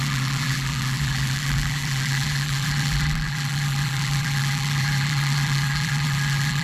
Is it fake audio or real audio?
fake